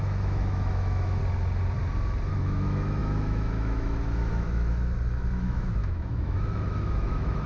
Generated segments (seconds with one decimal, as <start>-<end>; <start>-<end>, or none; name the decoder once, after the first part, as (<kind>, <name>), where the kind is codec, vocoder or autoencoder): 0.0-1.2 (autoencoder, DAC-VAE); 2.3-7.5